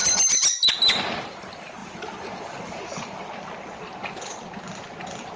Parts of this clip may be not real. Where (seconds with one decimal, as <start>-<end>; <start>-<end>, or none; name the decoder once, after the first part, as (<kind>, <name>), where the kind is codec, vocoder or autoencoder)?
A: none